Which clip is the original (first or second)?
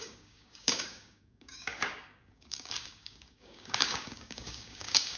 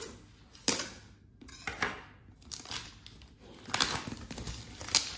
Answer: second